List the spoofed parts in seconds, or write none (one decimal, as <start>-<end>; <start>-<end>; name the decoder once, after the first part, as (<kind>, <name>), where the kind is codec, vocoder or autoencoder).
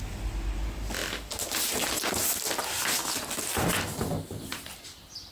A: none